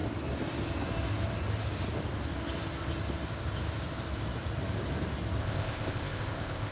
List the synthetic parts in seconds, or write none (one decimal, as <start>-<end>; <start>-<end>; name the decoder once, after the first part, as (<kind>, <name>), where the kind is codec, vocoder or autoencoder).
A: 5.4-6.7 (codec, ZipCodec)